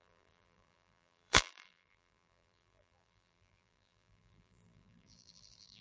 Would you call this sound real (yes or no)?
no